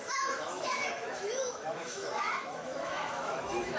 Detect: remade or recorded remade